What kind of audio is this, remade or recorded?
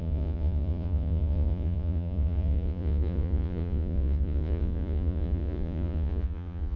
remade